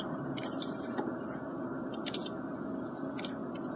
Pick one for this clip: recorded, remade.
recorded